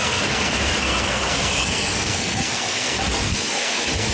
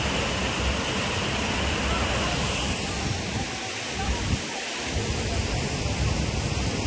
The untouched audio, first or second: second